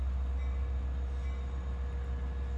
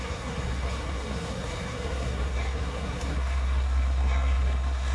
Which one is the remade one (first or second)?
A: second